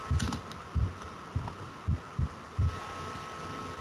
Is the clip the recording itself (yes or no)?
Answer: yes